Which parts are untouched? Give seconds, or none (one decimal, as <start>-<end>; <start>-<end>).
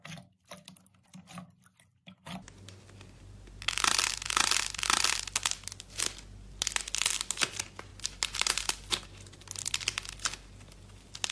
0.0-11.3